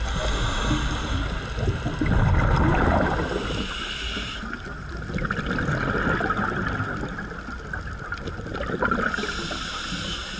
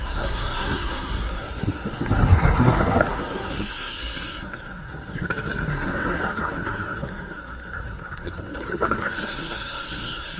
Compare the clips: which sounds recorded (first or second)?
first